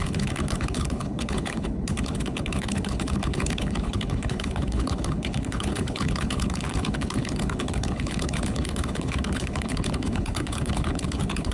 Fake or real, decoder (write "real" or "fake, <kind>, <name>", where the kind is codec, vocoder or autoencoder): fake, codec, HILCodec